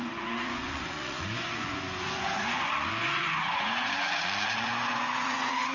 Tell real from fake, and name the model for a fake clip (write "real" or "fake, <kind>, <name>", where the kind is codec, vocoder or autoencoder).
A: fake, vocoder, Vocos